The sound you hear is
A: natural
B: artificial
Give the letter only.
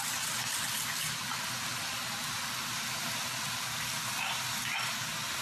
A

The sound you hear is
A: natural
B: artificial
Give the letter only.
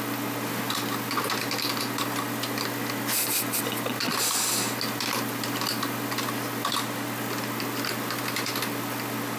A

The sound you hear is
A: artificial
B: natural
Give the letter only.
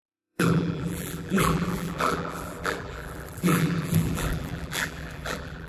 A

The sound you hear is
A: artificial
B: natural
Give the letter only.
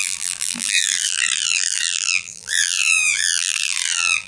A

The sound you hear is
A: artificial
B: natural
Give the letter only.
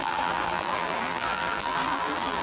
A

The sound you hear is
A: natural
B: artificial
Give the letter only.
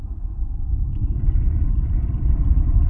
B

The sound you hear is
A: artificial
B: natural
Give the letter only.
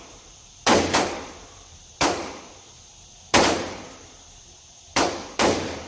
A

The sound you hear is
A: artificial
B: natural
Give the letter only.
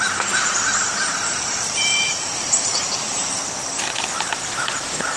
A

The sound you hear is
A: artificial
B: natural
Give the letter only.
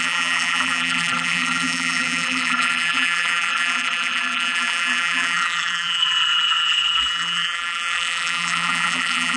A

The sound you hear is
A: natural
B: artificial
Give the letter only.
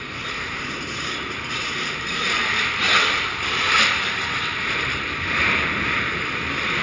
B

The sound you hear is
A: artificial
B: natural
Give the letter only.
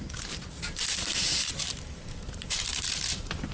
A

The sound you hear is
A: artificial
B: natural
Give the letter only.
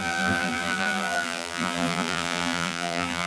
A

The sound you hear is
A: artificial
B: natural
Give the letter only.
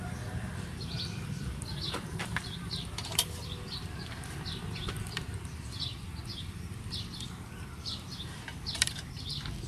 A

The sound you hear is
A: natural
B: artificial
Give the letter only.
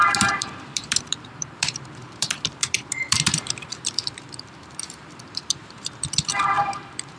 B